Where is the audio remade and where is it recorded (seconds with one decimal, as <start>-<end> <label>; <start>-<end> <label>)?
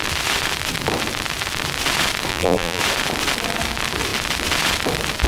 0.0-2.3 recorded; 2.3-2.8 remade; 2.8-5.3 recorded